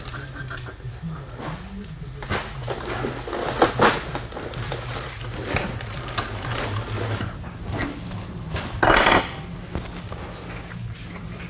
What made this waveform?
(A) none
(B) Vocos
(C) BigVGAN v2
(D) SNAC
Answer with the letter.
A